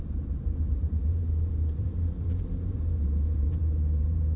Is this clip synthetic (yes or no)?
yes